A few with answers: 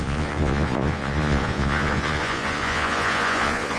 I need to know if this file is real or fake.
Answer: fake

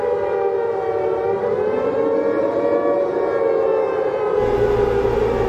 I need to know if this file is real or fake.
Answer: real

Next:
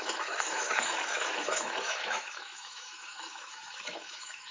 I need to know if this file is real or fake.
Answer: fake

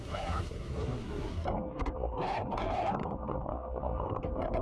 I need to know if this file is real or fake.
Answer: fake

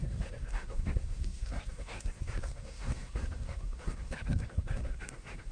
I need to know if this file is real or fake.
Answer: fake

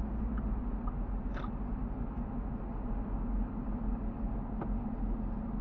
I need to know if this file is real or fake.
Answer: real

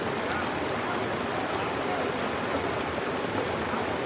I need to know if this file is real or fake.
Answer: real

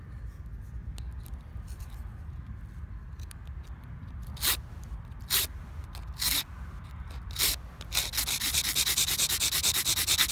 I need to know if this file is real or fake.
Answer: real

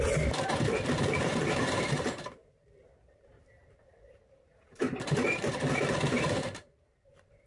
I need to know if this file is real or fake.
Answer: fake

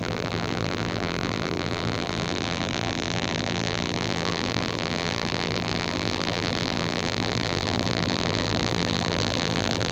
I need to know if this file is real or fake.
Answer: fake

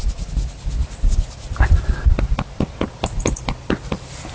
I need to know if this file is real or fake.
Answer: real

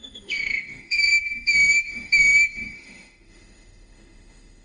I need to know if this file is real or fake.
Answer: fake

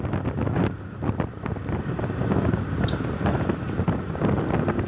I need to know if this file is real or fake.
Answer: real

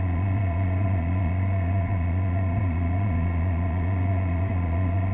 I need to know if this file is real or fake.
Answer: fake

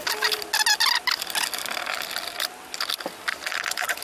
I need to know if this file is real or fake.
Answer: real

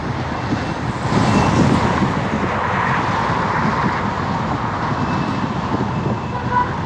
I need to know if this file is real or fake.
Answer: real